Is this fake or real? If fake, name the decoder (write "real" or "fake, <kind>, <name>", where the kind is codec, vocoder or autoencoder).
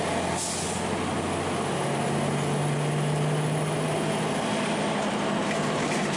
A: real